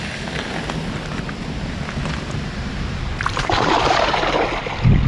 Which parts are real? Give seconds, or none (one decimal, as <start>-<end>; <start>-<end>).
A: 0.0-2.0; 4.1-5.1